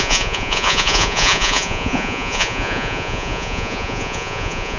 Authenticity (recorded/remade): remade